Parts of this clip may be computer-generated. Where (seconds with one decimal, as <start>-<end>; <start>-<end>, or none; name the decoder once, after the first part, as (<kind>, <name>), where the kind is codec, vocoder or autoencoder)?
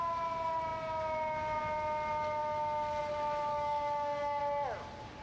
3.5-4.4 (codec, DAC)